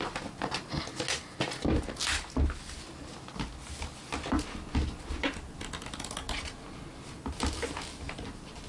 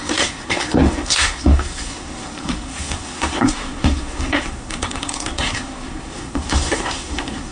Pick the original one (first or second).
first